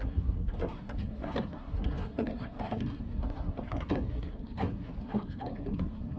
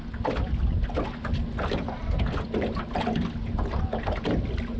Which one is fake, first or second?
first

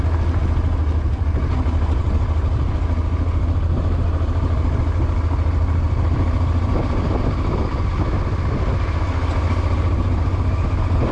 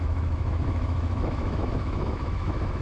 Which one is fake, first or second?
second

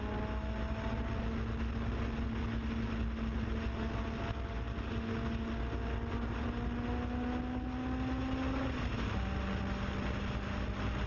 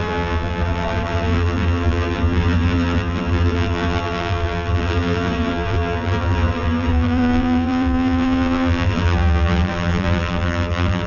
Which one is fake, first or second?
second